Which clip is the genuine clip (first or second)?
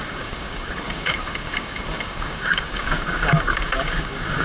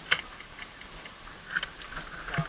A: second